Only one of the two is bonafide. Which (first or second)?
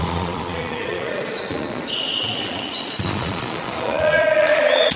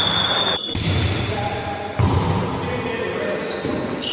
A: second